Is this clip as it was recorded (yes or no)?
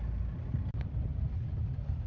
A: yes